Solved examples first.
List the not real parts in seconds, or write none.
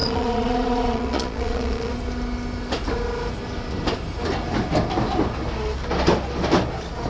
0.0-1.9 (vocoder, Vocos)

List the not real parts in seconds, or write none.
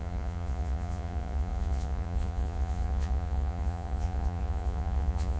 0.0-5.4 (vocoder, Vocos)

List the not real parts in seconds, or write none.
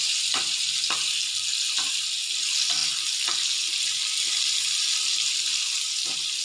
none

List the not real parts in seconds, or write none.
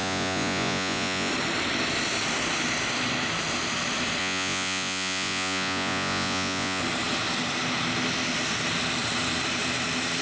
0.0-1.3 (vocoder, Vocos); 4.2-6.8